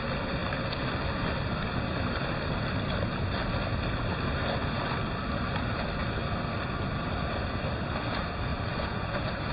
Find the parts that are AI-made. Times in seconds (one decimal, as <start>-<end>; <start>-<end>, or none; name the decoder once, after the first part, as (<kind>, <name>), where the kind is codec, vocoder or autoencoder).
8.5-9.5 (vocoder, Vocos)

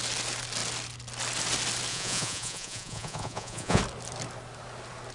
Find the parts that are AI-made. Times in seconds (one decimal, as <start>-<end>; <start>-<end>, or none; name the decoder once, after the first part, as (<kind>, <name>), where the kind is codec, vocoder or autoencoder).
1.9-3.8 (vocoder, Vocos)